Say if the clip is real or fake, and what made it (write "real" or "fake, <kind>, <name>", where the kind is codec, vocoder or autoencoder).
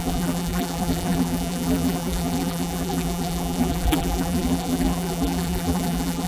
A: fake, vocoder, BigVGAN v2